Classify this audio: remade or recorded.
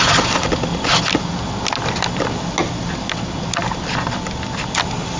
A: recorded